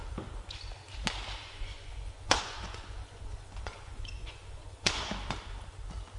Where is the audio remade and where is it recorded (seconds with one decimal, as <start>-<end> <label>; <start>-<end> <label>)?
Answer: 0.0-1.4 recorded; 1.4-5.1 remade; 5.1-6.2 recorded